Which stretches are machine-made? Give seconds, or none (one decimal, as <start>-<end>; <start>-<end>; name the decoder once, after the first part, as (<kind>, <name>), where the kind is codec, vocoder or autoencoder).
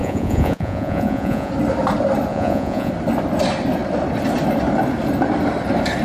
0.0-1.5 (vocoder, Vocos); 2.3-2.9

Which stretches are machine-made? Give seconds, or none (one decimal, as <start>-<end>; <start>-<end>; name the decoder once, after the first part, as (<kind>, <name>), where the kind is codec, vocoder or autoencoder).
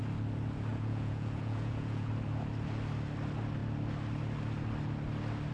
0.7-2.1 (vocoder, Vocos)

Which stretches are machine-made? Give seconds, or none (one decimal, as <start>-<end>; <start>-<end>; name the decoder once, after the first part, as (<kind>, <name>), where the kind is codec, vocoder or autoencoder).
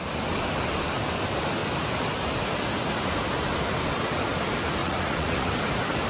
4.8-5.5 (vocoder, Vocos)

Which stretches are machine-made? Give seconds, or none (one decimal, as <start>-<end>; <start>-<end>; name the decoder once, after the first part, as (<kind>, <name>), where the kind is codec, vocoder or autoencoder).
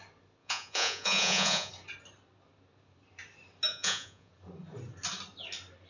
0.4-1.7 (vocoder, Vocos); 3.7-4.3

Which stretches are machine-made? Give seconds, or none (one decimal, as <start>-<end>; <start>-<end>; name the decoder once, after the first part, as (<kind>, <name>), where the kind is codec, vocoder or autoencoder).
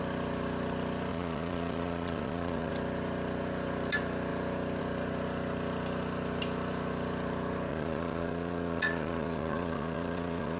1.1-2.7 (vocoder, Vocos); 7.7-10.6